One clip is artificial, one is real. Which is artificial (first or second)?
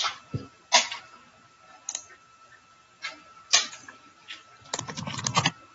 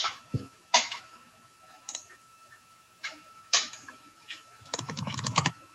second